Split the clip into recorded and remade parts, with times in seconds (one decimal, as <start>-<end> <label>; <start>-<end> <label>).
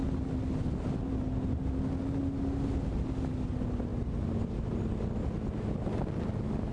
0.0-6.7 recorded